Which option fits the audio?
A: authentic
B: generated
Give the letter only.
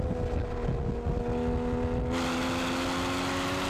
A